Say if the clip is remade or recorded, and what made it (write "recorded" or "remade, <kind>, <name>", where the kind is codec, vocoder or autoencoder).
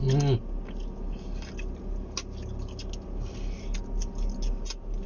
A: recorded